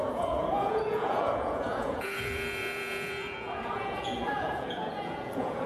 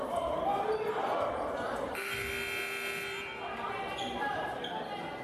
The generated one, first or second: first